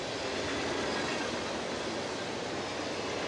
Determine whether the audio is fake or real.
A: real